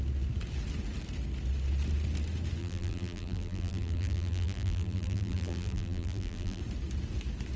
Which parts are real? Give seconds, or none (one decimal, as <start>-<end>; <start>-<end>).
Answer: 0.0-2.6; 6.6-7.6